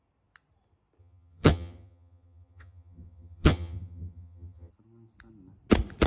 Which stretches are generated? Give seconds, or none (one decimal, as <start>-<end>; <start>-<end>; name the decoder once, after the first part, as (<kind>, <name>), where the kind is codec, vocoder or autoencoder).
1.0-4.7 (vocoder, HiFi-GAN)